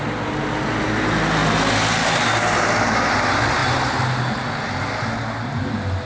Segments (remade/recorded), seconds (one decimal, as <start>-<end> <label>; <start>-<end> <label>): 0.0-6.0 recorded